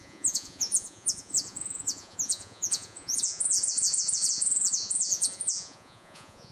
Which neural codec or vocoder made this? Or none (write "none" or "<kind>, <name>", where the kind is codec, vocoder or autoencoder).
vocoder, Vocos